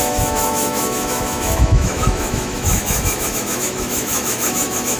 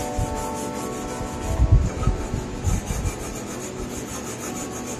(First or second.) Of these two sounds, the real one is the second